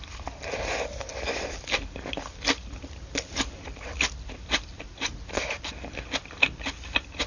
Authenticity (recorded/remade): recorded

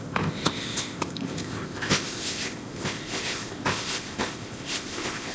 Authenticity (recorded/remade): remade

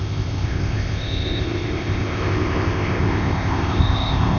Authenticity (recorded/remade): remade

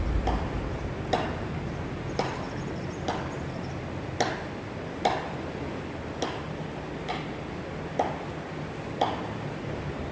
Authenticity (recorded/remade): recorded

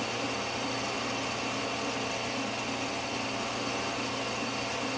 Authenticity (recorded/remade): recorded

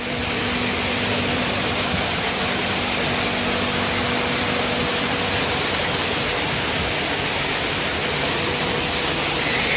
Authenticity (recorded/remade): recorded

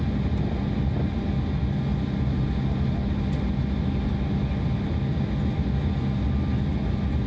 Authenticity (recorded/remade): recorded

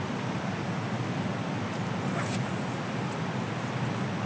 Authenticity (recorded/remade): recorded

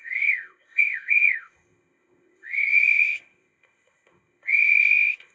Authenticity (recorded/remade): remade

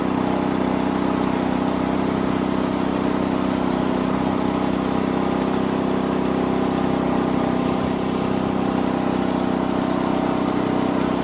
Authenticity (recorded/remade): recorded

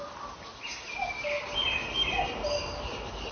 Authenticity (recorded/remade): recorded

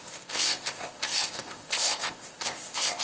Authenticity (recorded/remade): remade